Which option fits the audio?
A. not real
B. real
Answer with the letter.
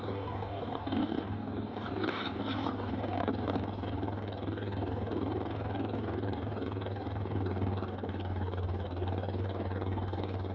A